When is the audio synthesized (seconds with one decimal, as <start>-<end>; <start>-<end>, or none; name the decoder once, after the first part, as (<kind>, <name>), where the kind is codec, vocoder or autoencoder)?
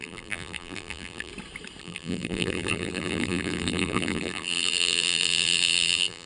0.0-1.3 (vocoder, BigVGAN v2); 1.8-6.3